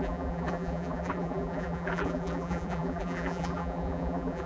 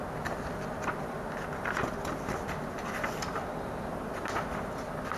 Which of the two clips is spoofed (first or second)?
first